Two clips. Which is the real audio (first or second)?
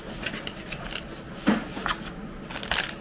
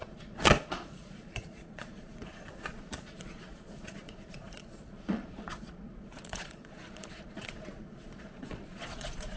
first